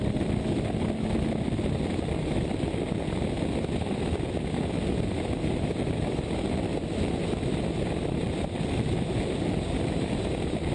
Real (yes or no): yes